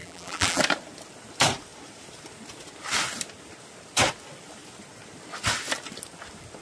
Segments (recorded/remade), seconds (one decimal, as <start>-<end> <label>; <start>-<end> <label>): 0.0-0.6 remade; 0.6-6.6 recorded